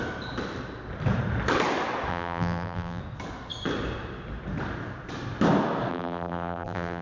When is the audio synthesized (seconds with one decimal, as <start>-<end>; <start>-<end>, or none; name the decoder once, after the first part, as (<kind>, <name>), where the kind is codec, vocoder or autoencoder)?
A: 2.1-3.0 (vocoder, BigVGAN v2); 5.9-7.0